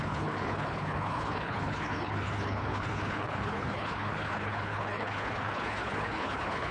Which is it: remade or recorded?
remade